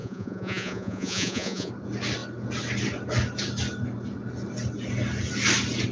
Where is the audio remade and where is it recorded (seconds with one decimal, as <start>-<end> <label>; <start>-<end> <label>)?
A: 0.0-1.7 remade; 1.7-5.9 recorded